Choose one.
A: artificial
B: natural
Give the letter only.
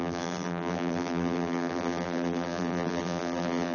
A